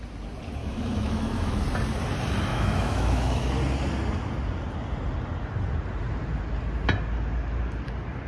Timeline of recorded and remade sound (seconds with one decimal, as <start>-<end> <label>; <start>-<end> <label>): 0.0-0.6 recorded; 0.6-1.6 remade; 1.6-2.5 recorded; 2.5-3.5 remade; 3.5-8.3 recorded